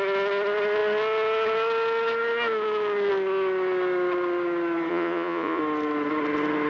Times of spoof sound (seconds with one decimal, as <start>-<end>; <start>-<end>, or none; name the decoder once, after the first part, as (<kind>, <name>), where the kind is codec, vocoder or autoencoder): 4.9-5.6 (vocoder, Vocos)